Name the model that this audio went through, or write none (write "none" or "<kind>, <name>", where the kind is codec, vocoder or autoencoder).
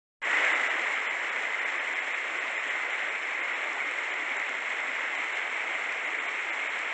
none